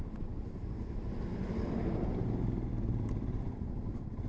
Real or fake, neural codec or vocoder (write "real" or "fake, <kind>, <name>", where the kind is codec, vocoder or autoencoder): real